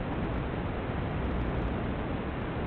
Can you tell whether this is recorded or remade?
recorded